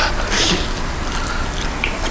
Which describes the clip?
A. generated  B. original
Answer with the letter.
B